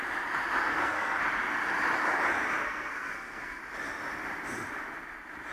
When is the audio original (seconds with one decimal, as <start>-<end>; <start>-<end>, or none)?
0.0-0.7; 1.2-2.6; 3.6-5.5